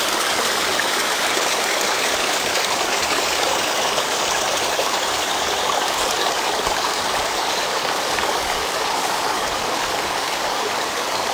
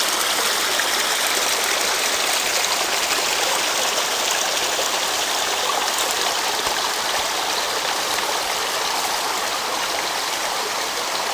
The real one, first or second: second